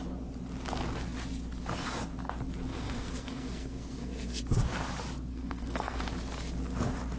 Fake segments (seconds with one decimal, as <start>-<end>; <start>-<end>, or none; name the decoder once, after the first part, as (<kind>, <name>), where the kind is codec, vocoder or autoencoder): 2.7-4.4 (codec, SNAC); 5.3-6.0